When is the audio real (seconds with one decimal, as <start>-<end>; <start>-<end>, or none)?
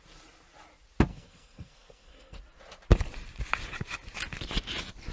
0.0-1.1; 2.4-5.1